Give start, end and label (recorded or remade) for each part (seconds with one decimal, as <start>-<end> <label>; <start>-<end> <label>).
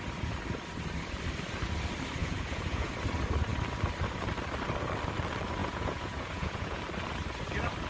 0.0-2.2 recorded; 2.2-2.9 remade; 2.9-5.6 recorded; 5.6-6.8 remade; 6.8-7.9 recorded